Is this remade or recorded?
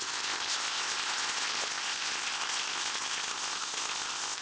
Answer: remade